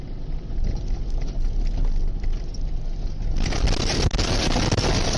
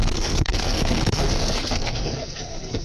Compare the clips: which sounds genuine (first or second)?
first